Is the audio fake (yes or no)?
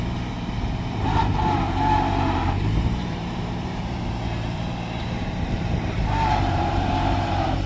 yes